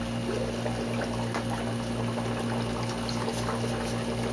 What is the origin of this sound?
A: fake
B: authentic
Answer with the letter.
B